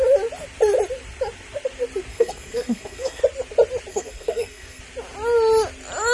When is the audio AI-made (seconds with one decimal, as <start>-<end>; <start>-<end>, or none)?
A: 2.1-3.2; 3.9-4.8